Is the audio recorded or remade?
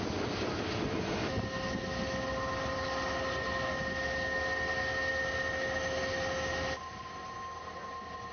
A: recorded